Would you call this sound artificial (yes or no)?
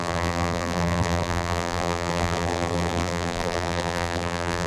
yes